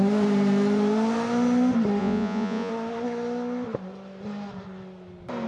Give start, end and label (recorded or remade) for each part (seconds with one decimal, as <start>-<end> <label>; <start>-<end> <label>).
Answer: 0.0-2.0 recorded; 2.0-2.7 remade; 2.7-5.5 recorded